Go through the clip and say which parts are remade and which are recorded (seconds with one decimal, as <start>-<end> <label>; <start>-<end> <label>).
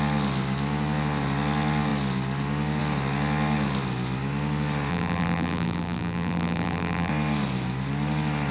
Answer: 0.0-4.9 recorded; 4.9-7.1 remade; 7.1-8.5 recorded